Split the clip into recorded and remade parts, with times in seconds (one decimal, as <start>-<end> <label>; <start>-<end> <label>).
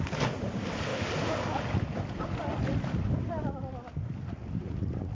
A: 0.0-5.1 recorded